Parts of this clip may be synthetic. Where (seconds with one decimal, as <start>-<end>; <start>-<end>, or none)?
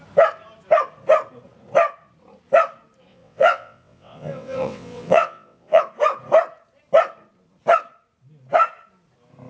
3.1-5.8